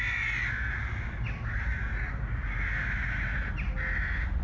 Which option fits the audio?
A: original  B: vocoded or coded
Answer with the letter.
A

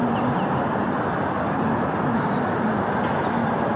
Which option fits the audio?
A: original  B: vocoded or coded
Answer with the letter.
A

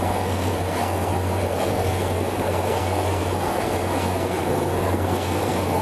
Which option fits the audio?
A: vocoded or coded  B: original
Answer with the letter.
A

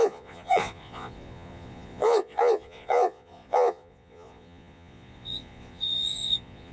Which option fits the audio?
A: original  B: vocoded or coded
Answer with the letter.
B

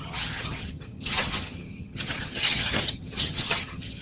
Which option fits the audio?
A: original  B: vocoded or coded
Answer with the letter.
B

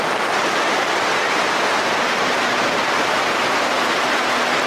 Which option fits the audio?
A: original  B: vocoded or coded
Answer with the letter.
A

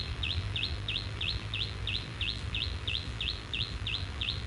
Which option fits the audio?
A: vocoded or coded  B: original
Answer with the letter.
A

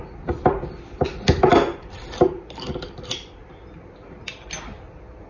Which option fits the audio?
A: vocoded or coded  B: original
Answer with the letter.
B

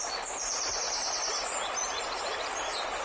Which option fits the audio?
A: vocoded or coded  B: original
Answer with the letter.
B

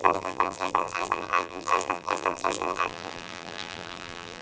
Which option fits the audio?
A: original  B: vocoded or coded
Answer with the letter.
B